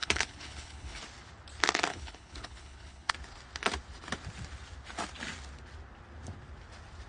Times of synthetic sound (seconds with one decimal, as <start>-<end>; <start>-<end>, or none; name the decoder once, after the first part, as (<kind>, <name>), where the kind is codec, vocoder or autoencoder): 0.0-1.0 (codec, HILCodec); 1.9-3.1